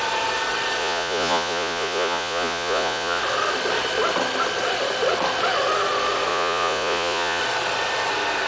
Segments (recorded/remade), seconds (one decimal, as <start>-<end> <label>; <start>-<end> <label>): 0.0-0.8 recorded; 0.8-3.2 remade; 3.2-6.3 recorded; 6.3-7.4 remade; 7.4-8.5 recorded